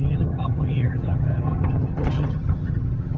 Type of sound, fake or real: fake